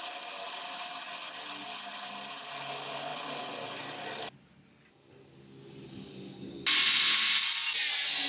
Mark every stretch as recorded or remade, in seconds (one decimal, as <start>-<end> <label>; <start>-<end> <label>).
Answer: 0.0-8.3 recorded